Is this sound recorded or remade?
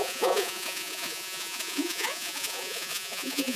remade